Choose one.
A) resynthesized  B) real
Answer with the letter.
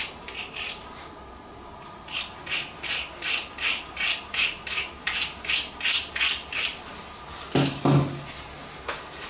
B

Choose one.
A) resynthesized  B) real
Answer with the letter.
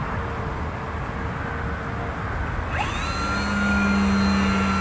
B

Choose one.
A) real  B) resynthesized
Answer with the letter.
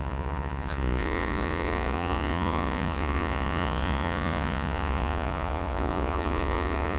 B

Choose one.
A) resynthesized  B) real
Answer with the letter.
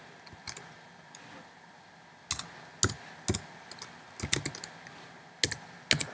B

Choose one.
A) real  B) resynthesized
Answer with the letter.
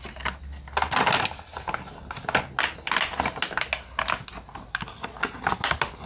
A